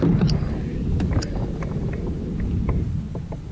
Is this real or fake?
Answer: real